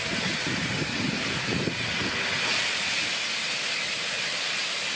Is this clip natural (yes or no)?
yes